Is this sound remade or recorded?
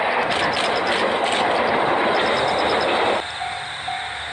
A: recorded